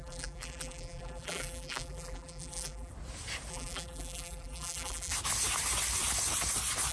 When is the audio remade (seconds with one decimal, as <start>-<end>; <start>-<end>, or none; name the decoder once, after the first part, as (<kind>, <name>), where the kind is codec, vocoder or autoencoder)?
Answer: 0.0-2.9 (vocoder, BigVGAN v2); 3.5-5.1